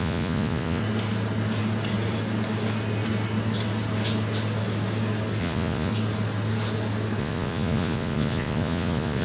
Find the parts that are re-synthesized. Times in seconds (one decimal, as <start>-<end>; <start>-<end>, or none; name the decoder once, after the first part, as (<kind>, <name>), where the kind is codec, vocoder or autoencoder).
0.0-0.8 (vocoder, Vocos); 5.4-5.9; 7.2-9.2